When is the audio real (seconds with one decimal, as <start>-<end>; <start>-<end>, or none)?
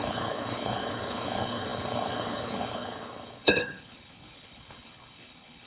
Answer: none